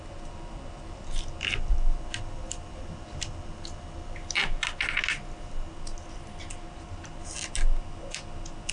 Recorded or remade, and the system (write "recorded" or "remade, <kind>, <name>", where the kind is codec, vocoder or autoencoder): recorded